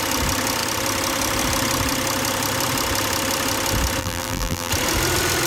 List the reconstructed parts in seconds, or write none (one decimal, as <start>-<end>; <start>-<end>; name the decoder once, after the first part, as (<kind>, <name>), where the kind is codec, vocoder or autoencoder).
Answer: 4.0-4.7 (vocoder, BigVGAN v2)